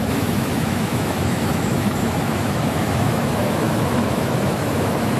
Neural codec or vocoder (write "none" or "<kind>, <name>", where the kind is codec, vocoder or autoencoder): autoencoder, DAC-VAE